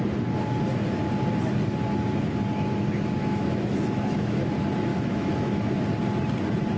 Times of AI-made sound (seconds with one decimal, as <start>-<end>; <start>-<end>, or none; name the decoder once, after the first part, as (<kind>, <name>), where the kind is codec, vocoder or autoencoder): 3.2-4.5 (autoencoder, DAC-VAE); 4.9-5.7